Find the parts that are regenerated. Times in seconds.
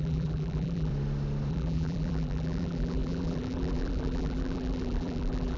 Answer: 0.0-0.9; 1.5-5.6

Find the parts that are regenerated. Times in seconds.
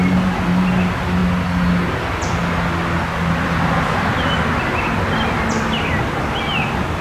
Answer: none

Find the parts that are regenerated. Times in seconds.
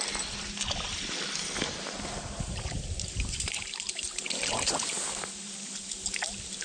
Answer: 1.4-4.9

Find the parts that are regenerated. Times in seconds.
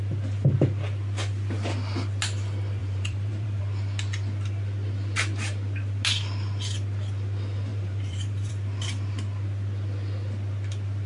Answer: 2.8-3.6; 7.7-8.5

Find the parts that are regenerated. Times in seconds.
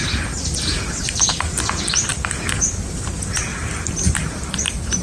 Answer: 3.5-4.5